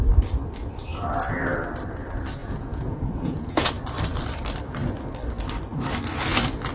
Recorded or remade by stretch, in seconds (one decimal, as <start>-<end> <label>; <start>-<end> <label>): 0.0-2.4 recorded; 2.4-3.7 remade; 3.7-6.7 recorded